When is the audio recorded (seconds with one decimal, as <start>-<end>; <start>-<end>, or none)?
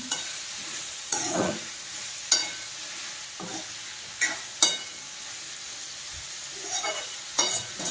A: 2.4-7.0